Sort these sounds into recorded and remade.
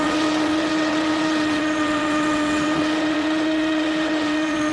remade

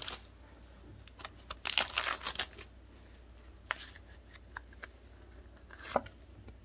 recorded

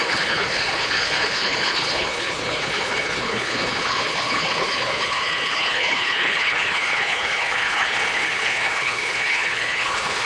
remade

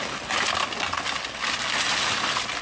recorded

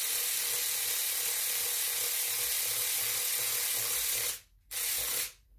recorded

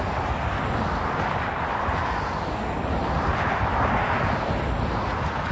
recorded